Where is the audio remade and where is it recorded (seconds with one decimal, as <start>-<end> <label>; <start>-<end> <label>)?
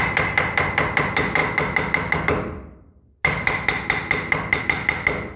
0.0-5.4 recorded